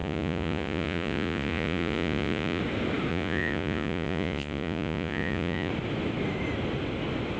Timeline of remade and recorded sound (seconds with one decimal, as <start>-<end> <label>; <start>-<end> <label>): 0.0-2.6 remade; 2.6-3.1 recorded; 3.1-5.7 remade; 5.7-7.4 recorded